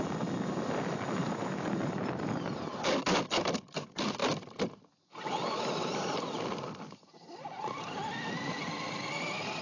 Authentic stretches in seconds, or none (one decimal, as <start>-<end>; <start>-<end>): 0.0-1.2; 1.9-9.6